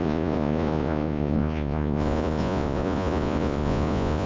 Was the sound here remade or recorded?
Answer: remade